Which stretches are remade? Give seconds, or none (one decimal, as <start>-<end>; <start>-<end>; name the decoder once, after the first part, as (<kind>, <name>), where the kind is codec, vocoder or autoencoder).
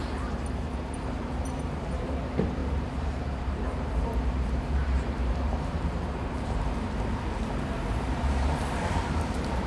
0.0-9.7 (vocoder, BigVGAN v2)